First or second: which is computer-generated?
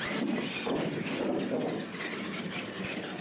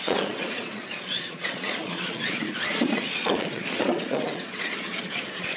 second